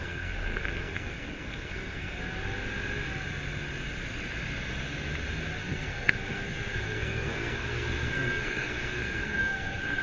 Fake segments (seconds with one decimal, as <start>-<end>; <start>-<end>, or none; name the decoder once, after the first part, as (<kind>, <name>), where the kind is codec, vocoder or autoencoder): 0.0-2.2 (codec, SNAC); 5.6-10.0